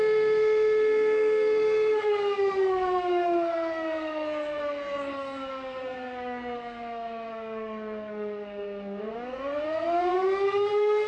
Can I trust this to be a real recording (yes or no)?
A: no